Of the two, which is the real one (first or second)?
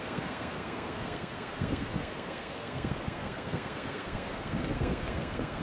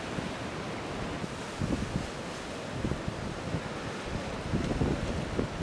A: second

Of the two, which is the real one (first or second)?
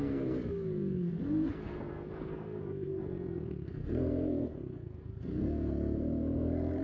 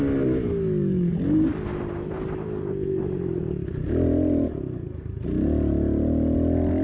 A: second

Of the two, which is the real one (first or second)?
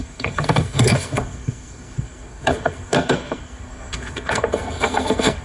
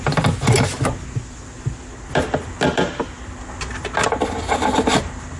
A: second